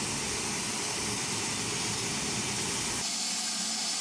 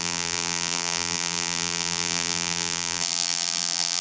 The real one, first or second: first